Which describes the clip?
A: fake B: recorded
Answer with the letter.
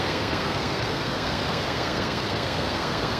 A